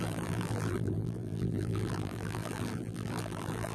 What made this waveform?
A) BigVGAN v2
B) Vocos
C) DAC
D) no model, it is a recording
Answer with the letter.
A